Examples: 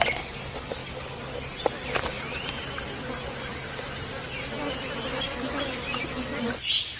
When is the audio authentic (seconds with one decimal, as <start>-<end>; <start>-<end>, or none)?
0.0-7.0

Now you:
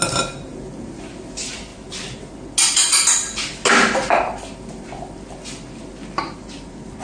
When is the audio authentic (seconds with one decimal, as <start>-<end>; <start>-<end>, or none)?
0.0-7.0

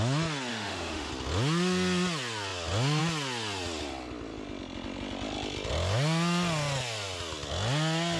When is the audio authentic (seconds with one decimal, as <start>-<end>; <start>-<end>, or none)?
0.0-0.5; 1.1-8.2